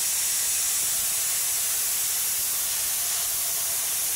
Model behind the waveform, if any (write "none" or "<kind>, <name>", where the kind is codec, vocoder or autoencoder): none